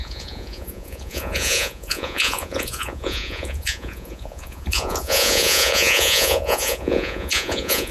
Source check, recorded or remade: remade